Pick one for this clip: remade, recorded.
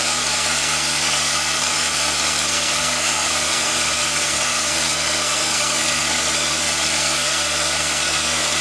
remade